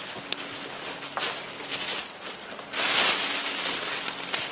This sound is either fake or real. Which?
real